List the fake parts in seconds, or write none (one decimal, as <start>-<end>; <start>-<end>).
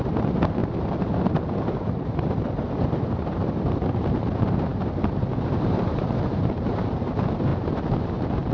0.0-0.6; 1.4-8.5